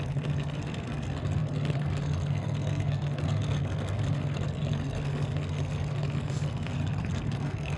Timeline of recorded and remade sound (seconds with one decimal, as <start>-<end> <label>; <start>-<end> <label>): 0.0-7.8 remade